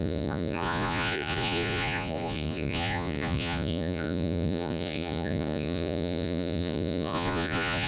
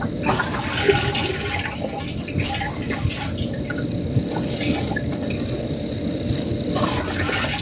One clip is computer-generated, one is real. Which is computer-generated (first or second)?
first